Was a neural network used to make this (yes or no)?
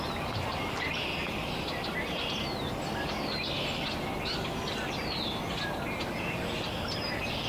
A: no